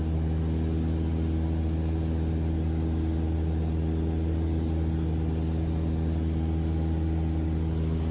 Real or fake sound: real